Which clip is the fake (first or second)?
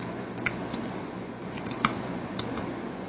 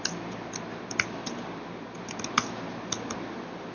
first